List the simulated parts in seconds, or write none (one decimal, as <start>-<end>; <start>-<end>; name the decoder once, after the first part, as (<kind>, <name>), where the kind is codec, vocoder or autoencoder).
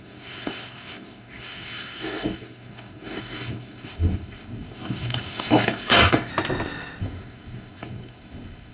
0.0-6.3 (codec, SNAC); 7.0-8.7